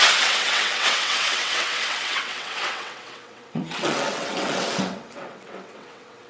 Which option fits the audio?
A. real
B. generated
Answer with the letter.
B